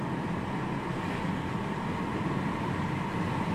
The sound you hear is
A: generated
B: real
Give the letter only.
B